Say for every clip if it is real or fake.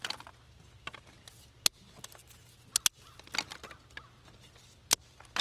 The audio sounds real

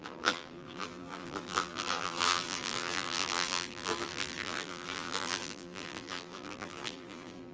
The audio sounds fake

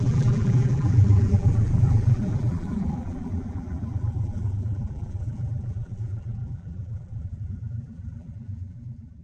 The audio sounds fake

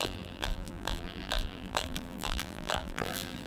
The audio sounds fake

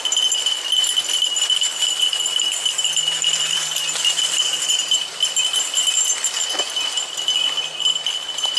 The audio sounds fake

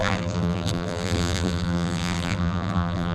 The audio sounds fake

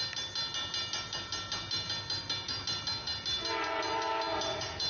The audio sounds real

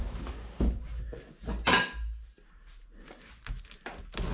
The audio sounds real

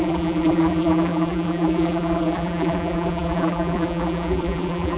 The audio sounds fake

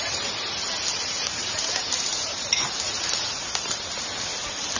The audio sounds fake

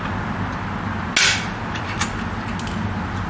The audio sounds real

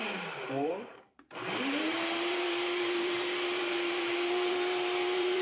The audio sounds fake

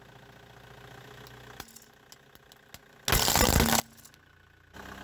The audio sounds real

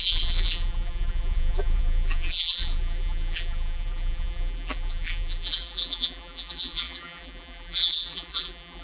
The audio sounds fake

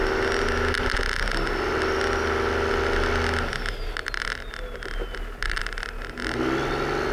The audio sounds real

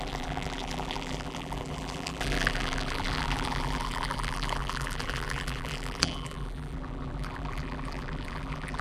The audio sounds fake